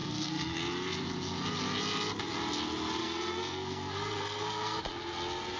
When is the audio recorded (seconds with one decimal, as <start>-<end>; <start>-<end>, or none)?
0.6-3.0; 4.8-5.6